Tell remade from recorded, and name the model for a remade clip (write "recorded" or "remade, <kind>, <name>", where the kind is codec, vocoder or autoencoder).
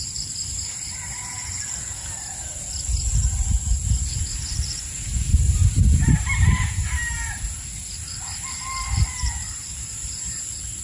remade, vocoder, BigVGAN v2